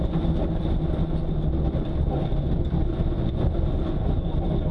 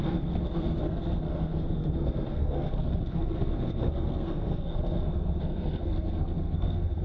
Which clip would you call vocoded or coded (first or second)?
second